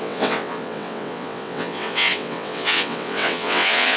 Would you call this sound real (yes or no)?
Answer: no